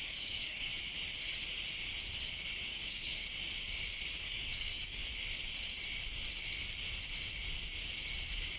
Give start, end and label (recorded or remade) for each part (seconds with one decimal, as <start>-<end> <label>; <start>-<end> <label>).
0.0-0.7 remade; 0.7-2.6 recorded; 2.6-3.2 remade; 3.2-4.2 recorded; 4.2-5.0 remade; 5.0-8.6 recorded

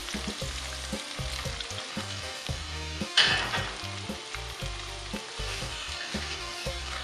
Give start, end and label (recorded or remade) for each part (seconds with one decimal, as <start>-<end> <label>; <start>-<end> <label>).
0.0-1.9 recorded; 1.9-3.3 remade; 3.3-5.4 recorded; 5.4-7.0 remade